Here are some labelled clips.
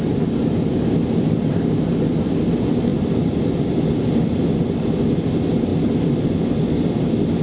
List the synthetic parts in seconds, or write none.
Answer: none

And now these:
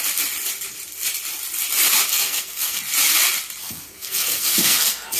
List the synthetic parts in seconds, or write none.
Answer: 2.1-2.8 (codec, SNAC); 3.6-5.2

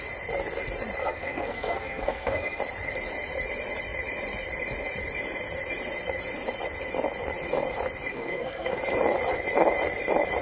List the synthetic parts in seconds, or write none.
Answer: 1.0-2.6 (codec, SNAC); 8.1-8.8

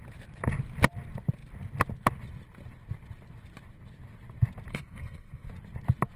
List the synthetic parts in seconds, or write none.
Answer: 4.7-5.5 (codec, SNAC)

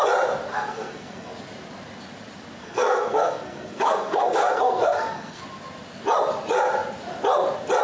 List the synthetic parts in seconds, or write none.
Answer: 0.5-1.3 (codec, SNAC); 2.6-5.4